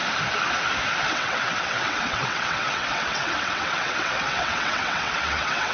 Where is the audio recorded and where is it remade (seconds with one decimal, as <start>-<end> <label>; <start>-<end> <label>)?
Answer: 0.0-1.0 recorded; 1.0-5.7 remade